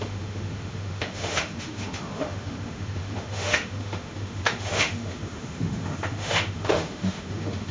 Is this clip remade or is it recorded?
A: remade